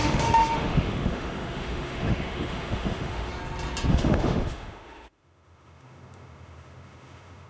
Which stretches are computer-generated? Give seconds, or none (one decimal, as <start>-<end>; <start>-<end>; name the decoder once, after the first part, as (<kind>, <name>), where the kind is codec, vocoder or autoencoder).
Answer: 0.0-3.3 (autoencoder, DAC-VAE); 3.9-7.5